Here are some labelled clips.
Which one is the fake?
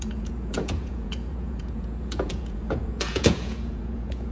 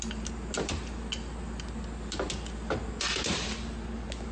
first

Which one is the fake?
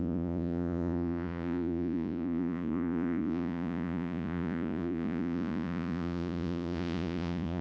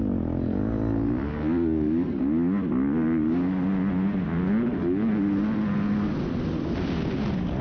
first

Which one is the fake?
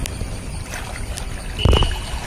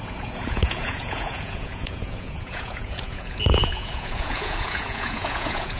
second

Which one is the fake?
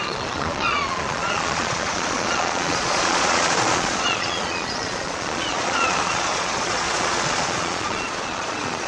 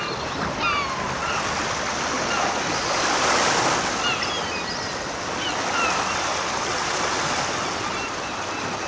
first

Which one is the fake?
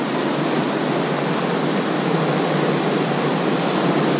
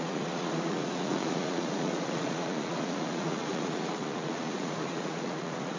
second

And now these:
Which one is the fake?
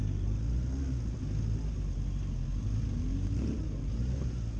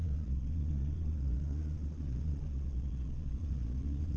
second